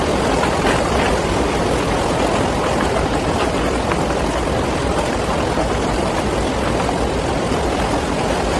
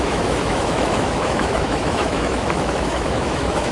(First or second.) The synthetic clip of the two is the second